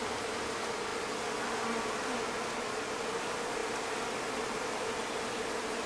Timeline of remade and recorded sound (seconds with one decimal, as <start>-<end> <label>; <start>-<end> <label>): 0.0-5.9 recorded